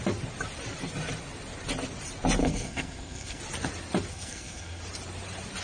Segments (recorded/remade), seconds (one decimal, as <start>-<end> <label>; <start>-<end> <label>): 0.0-2.4 recorded; 2.4-3.4 remade; 3.4-4.1 recorded; 4.1-4.8 remade; 4.8-5.6 recorded